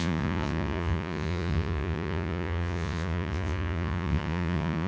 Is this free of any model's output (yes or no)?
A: no